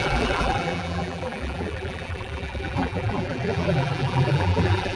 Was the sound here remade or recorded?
remade